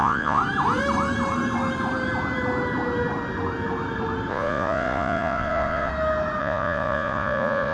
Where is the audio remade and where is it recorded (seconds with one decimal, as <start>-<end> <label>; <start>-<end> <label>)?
0.0-0.4 remade; 0.4-4.3 recorded; 4.3-5.9 remade; 5.9-6.4 recorded; 6.4-7.7 remade